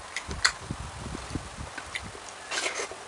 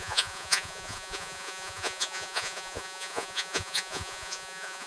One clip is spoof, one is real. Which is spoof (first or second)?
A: second